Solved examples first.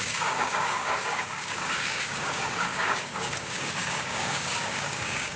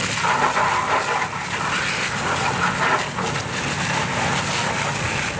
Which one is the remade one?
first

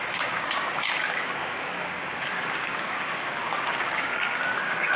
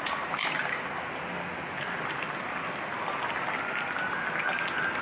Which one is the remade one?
first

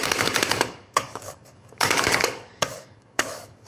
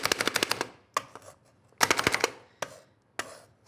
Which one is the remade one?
first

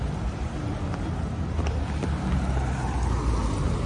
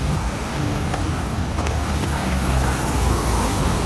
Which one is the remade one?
second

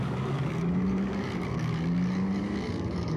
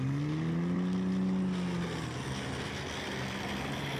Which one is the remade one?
first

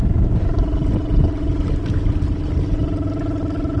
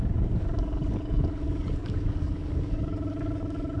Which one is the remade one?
second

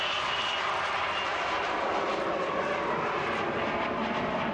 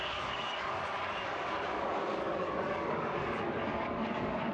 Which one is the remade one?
second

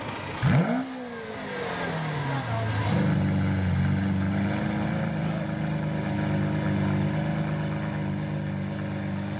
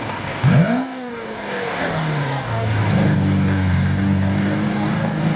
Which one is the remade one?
second